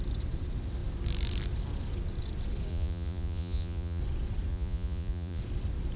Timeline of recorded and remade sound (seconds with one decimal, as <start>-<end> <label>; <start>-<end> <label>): 0.0-2.7 recorded; 2.7-4.0 remade; 4.0-4.5 recorded; 4.5-5.4 remade; 5.4-6.0 recorded